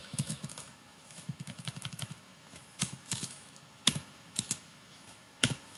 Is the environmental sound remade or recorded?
remade